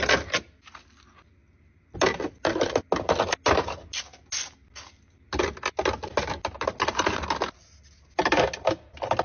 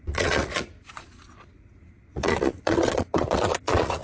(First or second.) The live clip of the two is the first